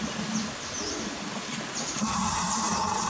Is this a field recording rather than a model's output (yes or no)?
yes